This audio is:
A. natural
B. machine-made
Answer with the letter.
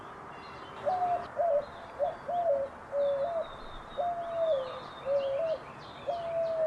A